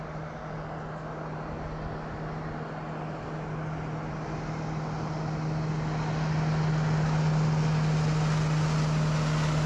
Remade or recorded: recorded